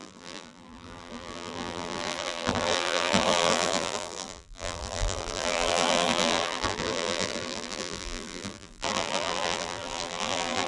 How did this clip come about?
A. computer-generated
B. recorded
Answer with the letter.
A